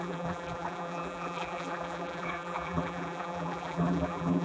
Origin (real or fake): fake